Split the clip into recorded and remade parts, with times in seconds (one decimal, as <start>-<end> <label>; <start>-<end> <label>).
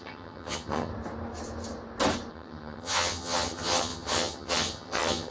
0.0-0.9 remade; 0.9-2.3 recorded; 2.3-5.3 remade